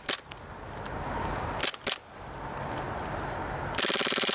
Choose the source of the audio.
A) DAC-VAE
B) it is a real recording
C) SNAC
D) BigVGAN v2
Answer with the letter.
B